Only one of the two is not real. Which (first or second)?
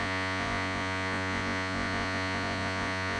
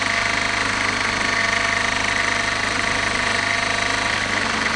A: first